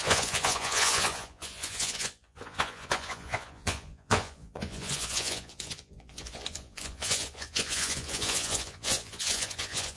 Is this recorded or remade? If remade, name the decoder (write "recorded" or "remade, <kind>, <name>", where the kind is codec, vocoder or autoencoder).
remade, vocoder, Vocos